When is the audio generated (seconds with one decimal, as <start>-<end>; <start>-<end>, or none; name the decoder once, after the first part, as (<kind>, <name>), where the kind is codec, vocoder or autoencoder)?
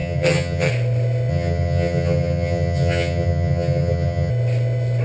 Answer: 0.0-0.7 (vocoder, HiFi-GAN); 1.3-4.3